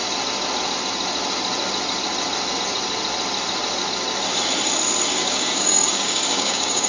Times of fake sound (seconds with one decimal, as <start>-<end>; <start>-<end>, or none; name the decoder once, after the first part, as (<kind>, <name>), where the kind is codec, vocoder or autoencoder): 5.1-6.9 (codec, DAC)